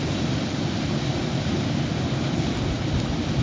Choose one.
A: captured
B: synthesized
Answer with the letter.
A